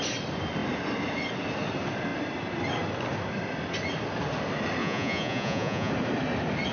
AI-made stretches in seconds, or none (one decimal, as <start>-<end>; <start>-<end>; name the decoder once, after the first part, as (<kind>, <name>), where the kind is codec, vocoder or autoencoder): 4.8-5.9 (vocoder, Vocos)